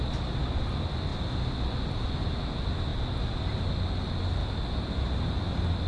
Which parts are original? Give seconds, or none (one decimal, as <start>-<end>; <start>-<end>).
0.0-5.9